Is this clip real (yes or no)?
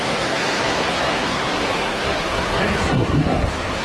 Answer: no